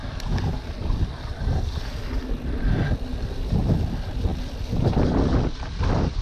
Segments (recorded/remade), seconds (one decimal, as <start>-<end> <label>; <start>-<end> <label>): 0.0-6.2 recorded